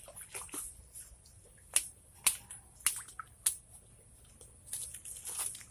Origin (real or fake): real